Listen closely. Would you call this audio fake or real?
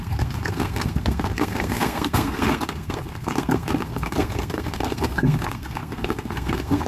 fake